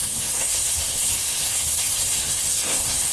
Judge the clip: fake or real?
fake